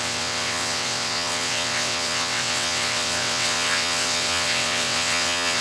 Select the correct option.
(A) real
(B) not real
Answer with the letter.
B